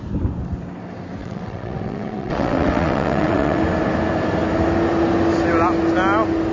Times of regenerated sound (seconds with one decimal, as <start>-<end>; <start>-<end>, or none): 1.2-3.6